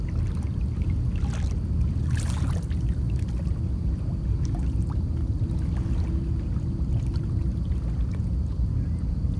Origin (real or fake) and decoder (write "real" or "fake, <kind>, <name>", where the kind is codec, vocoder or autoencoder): real